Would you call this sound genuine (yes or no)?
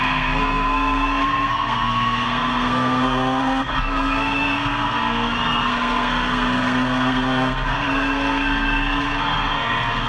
no